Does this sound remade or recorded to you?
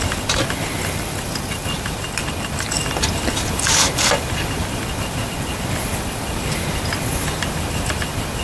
recorded